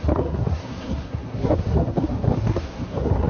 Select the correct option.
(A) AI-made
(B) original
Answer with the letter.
A